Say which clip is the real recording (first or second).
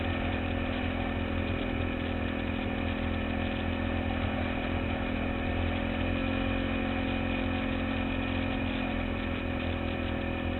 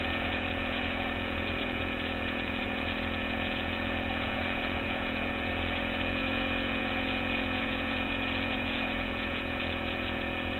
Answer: first